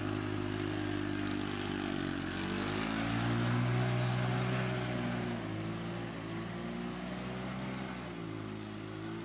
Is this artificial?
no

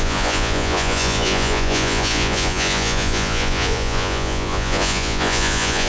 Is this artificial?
yes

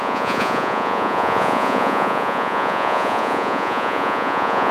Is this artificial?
yes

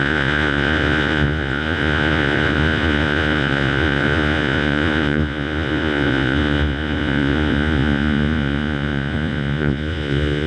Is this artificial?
yes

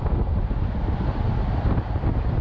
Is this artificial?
no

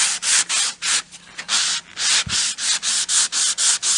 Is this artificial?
no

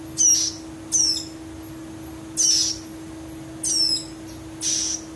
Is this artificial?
no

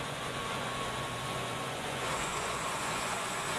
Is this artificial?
yes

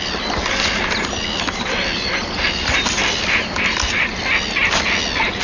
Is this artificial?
no